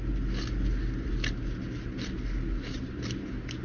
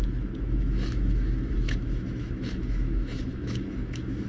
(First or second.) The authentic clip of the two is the first